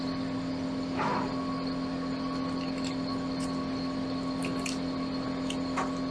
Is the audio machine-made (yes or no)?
no